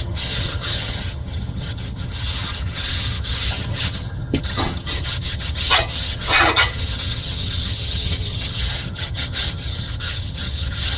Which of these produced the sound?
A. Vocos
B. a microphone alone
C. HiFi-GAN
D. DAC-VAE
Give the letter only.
C